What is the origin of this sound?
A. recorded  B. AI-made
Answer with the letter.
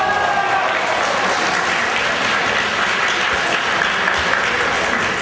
A